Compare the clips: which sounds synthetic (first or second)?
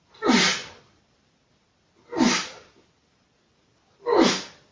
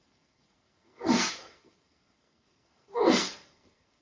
second